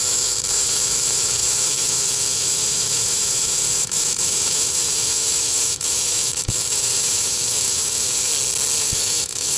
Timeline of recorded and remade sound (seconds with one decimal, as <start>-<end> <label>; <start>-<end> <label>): 0.0-8.3 remade; 8.3-8.8 recorded; 8.8-9.6 remade